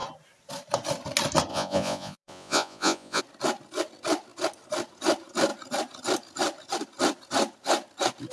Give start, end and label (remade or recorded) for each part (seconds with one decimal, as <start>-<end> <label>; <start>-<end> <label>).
0.0-1.5 recorded; 1.5-3.2 remade; 3.2-8.3 recorded